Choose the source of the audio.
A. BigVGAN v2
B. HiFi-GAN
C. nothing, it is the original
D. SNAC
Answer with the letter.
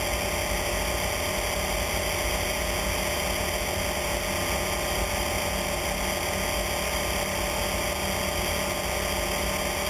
C